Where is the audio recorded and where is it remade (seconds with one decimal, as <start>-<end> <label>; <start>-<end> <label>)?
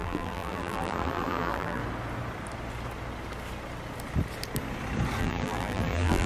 0.0-1.8 remade; 1.8-5.2 recorded; 5.2-6.3 remade